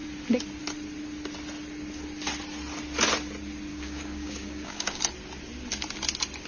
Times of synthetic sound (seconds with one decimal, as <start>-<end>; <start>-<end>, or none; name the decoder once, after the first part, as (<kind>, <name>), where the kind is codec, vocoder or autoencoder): 3.7-5.0 (codec, DAC)